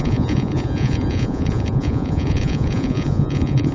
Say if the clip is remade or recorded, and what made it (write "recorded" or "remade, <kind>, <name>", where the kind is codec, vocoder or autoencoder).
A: remade, vocoder, Vocos